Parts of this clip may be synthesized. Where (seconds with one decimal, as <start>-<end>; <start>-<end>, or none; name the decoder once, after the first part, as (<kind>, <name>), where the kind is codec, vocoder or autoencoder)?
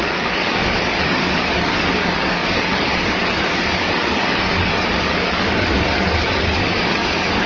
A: 0.0-7.5 (codec, DAC)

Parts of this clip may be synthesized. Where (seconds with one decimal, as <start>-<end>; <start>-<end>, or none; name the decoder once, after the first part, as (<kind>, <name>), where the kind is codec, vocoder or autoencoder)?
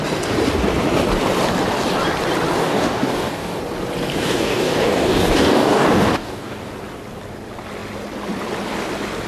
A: 2.6-3.6 (codec, DAC); 4.1-6.7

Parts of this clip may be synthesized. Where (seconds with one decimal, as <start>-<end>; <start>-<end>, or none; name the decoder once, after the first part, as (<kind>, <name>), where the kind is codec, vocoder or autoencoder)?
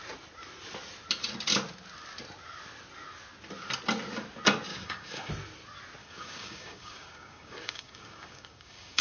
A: 4.7-5.3 (codec, DAC); 6.0-9.0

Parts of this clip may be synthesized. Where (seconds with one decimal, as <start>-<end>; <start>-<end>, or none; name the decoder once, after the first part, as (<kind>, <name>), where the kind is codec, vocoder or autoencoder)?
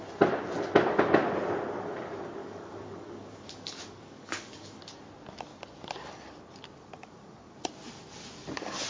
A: 2.4-4.8 (codec, DAC); 6.9-7.5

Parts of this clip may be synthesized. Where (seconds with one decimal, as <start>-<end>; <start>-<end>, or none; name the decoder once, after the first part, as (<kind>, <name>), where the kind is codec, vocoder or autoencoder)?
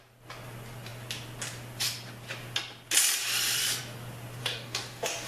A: 4.4-5.3 (codec, DAC)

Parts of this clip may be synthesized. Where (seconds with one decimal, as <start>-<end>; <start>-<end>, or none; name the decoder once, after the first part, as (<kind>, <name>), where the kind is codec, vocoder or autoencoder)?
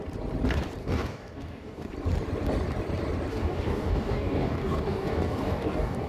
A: 0.8-1.9 (codec, DAC); 3.3-6.1